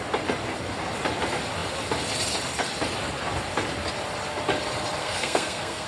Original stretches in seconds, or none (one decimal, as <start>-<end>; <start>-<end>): 0.0-5.0